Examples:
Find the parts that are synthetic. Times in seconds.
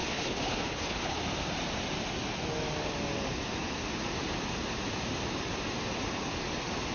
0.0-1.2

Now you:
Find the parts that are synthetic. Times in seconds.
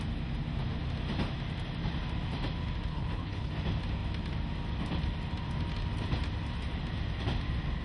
2.9-3.5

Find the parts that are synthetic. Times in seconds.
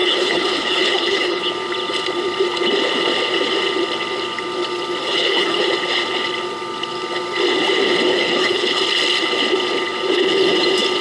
0.0-1.4; 5.0-5.7; 8.1-8.8